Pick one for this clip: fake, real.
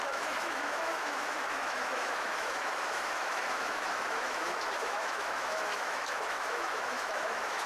fake